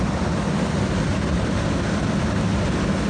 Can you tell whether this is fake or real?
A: real